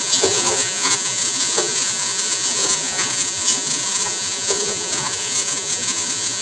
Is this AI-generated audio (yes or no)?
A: yes